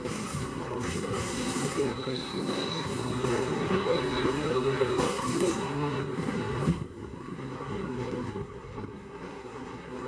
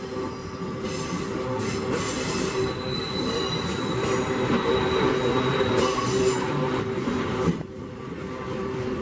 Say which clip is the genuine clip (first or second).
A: second